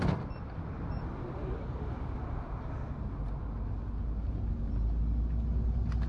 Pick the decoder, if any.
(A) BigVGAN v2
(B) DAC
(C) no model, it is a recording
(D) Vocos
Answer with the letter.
C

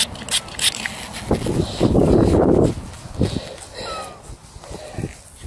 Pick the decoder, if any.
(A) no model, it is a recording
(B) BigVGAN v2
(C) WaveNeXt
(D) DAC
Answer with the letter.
A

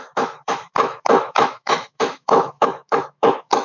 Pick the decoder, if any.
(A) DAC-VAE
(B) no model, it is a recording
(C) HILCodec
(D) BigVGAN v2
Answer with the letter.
A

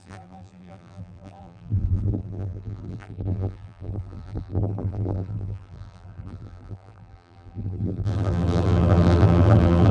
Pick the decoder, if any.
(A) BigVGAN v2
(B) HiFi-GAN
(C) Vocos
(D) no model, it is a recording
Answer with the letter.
A